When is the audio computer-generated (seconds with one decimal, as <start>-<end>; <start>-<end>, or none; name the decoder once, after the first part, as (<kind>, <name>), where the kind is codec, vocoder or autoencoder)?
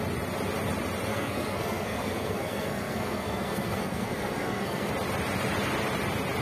1.1-4.9 (codec, SNAC)